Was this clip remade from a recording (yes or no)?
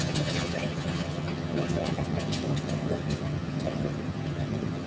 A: yes